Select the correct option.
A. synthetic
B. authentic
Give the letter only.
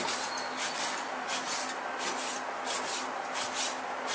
B